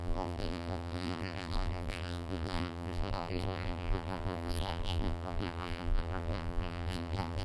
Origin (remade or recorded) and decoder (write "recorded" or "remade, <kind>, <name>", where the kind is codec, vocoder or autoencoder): remade, vocoder, BigVGAN v2